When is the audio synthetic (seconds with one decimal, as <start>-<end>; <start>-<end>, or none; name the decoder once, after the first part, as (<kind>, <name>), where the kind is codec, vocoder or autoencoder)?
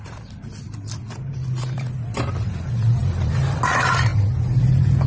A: 1.3-2.5 (vocoder, BigVGAN v2); 3.0-3.6